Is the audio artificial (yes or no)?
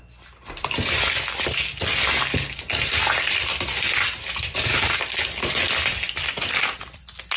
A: no